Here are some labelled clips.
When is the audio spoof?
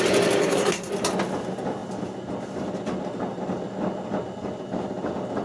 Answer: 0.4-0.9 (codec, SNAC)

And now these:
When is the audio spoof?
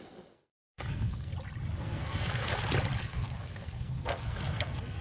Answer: 0.0-1.3 (codec, SNAC); 1.8-2.5; 3.0-5.0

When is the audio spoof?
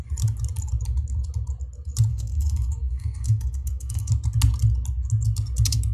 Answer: 2.1-4.1 (codec, SNAC)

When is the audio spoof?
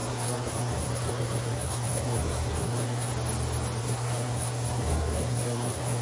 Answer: 0.0-3.1 (codec, SNAC); 3.8-6.0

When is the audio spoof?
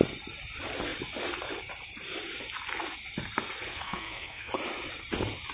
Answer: 3.7-4.5 (codec, SNAC)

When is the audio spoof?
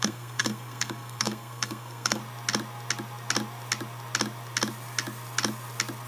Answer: 0.0-2.2 (codec, SNAC)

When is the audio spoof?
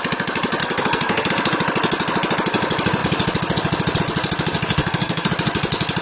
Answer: 0.6-1.3 (codec, SNAC); 4.8-5.3